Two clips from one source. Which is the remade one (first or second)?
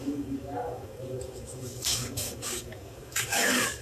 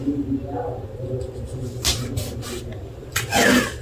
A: first